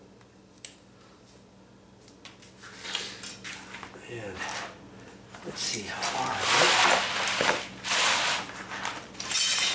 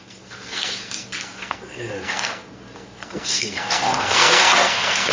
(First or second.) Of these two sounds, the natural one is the first